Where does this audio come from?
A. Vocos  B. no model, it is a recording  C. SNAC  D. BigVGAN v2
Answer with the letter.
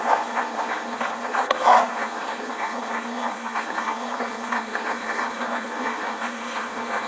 C